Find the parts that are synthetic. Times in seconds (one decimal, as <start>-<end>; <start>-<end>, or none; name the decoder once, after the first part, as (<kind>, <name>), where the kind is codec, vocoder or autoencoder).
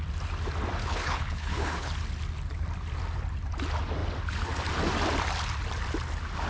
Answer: 0.8-1.9 (codec, HILCodec)